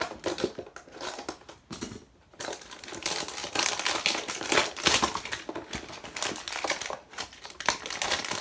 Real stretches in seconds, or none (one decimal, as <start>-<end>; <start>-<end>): 0.0-8.4

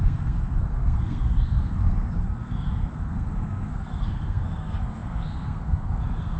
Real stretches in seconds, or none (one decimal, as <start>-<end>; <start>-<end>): none

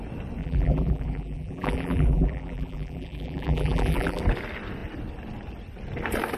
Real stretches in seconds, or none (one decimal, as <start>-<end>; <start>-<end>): 0.0-0.4; 4.2-6.4

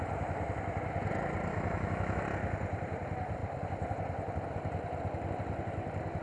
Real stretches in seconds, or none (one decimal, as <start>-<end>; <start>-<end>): 0.0-1.5; 2.2-6.2